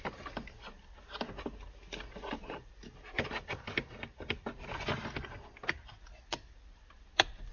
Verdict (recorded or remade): recorded